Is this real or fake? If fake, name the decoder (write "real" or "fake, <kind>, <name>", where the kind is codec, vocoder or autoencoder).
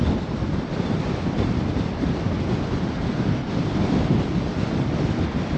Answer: real